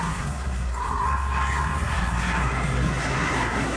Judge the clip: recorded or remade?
remade